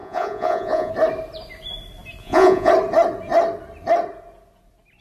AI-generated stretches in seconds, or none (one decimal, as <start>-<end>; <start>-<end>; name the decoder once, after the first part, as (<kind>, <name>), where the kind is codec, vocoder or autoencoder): 0.0-0.9 (vocoder, Vocos); 2.2-2.7